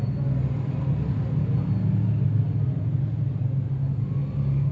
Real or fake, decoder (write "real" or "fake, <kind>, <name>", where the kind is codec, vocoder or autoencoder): real